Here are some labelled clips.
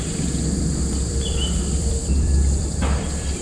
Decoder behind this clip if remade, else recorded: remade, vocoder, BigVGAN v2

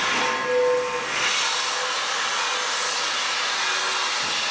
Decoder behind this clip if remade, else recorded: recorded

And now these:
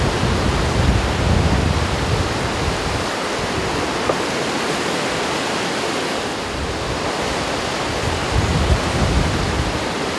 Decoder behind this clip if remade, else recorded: recorded